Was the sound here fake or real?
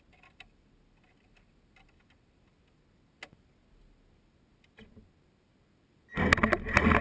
real